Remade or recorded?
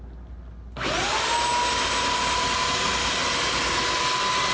recorded